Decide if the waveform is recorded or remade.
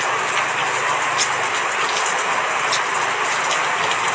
recorded